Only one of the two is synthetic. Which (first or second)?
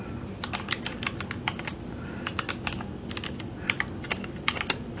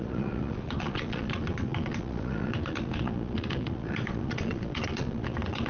second